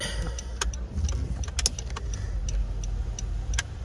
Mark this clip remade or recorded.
recorded